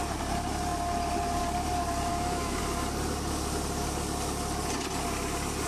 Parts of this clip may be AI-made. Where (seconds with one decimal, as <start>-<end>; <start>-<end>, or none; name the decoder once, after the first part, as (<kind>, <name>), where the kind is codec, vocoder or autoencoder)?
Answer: 2.1-2.6 (autoencoder, DAC-VAE)